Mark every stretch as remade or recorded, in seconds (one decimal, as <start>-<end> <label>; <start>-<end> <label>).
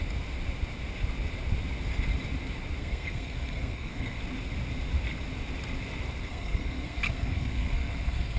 0.0-2.8 recorded; 2.8-4.2 remade; 4.2-6.3 recorded; 6.3-8.4 remade